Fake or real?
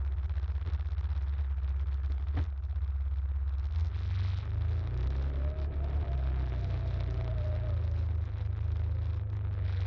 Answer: real